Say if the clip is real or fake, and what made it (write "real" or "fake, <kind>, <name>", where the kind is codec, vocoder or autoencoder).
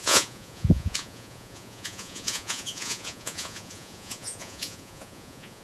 fake, vocoder, Vocos